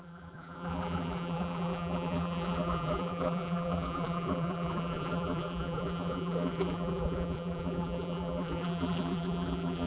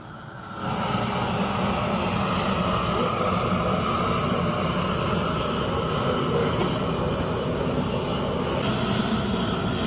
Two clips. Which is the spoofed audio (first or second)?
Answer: first